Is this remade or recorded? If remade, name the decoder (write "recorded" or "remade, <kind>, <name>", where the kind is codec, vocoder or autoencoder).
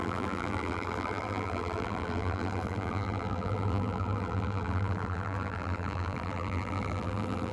remade, vocoder, BigVGAN v2